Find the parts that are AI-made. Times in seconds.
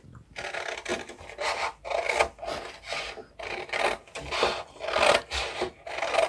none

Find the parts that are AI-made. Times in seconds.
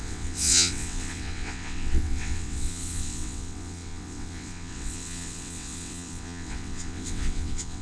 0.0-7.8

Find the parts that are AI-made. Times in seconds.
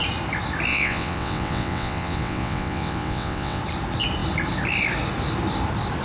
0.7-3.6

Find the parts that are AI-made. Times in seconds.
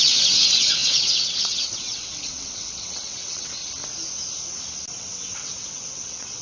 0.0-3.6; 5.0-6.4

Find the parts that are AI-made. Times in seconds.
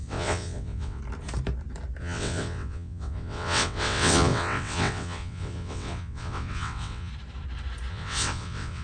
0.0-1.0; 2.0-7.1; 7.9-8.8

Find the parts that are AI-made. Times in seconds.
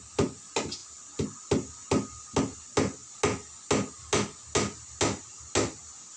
none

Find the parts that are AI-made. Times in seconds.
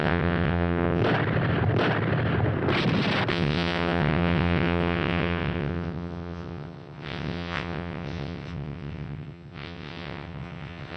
0.0-1.0; 3.3-11.0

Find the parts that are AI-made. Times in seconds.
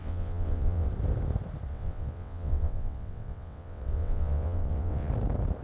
0.0-0.9; 1.7-5.1